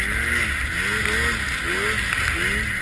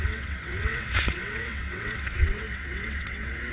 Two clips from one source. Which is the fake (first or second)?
second